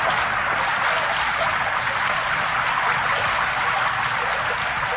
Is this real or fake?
real